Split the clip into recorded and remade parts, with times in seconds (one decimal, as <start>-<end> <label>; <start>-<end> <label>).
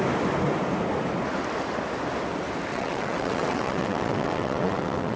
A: 0.0-2.7 recorded; 2.7-5.2 remade